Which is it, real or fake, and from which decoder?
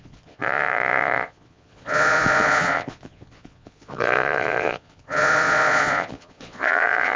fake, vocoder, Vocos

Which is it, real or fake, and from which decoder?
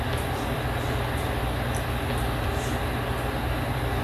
real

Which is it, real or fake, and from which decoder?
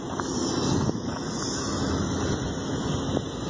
real